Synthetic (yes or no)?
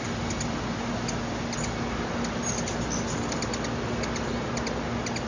no